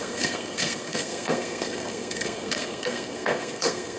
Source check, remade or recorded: remade